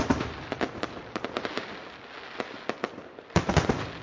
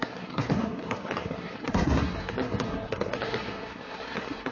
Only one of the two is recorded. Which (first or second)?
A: first